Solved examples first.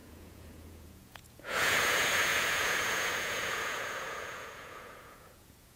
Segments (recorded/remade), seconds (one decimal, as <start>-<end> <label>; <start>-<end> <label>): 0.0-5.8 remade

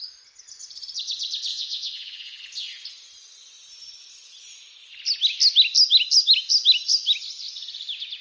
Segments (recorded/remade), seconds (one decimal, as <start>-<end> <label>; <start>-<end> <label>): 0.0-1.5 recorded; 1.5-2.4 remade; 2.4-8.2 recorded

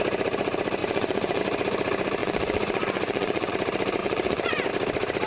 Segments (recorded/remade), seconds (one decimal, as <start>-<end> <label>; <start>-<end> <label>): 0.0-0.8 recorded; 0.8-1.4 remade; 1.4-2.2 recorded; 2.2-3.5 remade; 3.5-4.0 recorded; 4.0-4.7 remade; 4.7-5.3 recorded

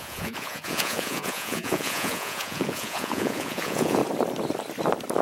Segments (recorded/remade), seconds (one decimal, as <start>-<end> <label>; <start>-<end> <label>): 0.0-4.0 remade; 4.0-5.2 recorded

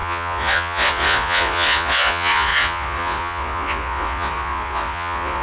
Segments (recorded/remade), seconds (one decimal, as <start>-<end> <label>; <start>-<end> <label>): 0.0-5.4 remade

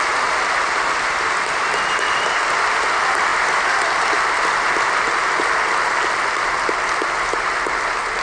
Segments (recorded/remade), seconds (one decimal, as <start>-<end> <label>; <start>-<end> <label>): 0.0-8.2 recorded

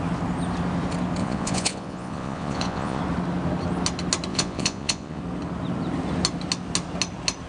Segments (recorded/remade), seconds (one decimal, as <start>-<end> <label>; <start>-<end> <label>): 0.0-1.2 recorded; 1.2-3.0 remade; 3.0-4.3 recorded; 4.3-5.2 remade; 5.2-7.5 recorded

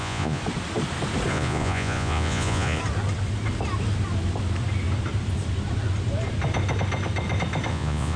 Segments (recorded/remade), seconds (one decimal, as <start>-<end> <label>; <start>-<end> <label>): 0.0-0.4 remade; 0.4-1.3 recorded; 1.3-2.8 remade; 2.8-7.7 recorded; 7.7-8.2 remade